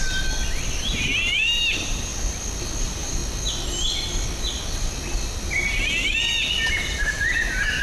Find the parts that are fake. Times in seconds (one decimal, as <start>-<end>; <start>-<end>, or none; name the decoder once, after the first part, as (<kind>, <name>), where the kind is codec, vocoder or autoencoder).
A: 0.8-2.1 (vocoder, BigVGAN v2); 2.8-3.2; 6.7-7.8